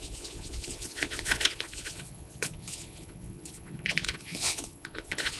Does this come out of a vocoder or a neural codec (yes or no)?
yes